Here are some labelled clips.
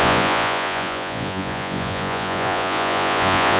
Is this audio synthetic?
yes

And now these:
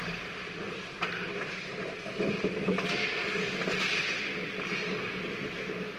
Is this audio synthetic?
no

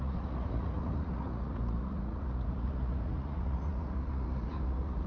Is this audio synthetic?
yes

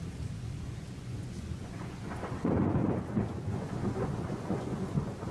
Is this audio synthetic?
yes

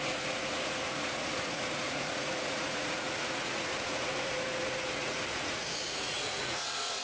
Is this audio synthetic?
yes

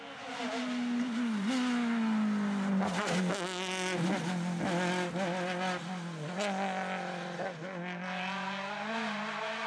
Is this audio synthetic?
no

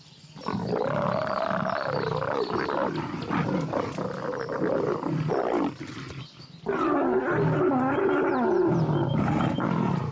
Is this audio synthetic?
no